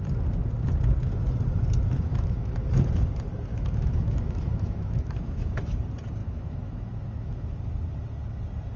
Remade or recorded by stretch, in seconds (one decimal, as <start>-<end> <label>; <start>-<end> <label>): 0.0-2.1 recorded; 2.1-2.7 remade; 2.7-3.5 recorded; 3.5-5.5 remade; 5.5-6.2 recorded; 6.2-7.6 remade; 7.6-8.8 recorded